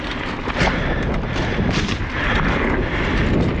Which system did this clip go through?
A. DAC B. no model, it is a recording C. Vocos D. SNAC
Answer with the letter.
B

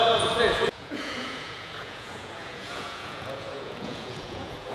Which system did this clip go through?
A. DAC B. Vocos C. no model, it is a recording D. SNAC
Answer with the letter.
B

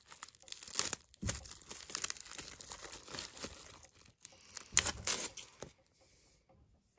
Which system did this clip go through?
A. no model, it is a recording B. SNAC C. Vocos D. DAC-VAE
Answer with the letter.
A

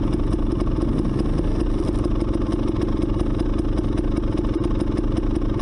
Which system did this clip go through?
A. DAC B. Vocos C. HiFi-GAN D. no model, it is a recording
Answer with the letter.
D